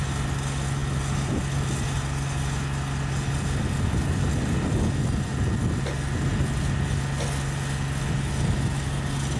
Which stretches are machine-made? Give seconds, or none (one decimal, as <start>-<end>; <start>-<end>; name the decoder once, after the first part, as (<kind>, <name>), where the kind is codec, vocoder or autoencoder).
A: none

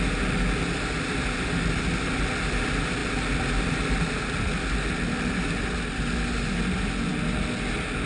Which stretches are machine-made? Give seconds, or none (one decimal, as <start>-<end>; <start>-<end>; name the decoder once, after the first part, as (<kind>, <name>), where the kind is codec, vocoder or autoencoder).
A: none

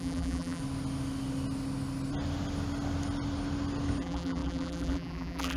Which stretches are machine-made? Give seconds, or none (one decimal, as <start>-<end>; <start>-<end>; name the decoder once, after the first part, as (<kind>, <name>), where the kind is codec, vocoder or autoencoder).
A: 0.0-0.6 (vocoder, BigVGAN v2); 4.0-5.6

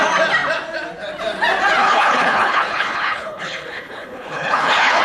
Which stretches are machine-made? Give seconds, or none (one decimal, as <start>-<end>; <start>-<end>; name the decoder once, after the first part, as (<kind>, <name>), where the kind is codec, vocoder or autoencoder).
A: 1.8-5.0 (codec, HILCodec)

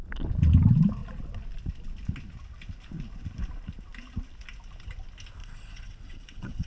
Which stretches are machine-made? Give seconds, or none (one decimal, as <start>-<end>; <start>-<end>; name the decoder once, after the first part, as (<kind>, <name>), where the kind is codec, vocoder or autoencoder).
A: 5.4-6.7 (vocoder, WaveNeXt)

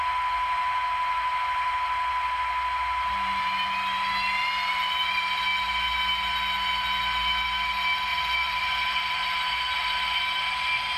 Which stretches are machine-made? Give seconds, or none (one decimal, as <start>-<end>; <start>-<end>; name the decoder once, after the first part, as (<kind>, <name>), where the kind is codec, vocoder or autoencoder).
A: 8.1-10.2 (vocoder, BigVGAN v2)